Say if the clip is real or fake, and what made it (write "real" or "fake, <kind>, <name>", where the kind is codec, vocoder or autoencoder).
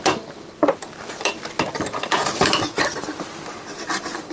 real